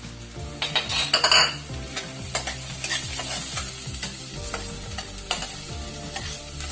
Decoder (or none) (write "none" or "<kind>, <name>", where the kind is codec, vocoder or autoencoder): none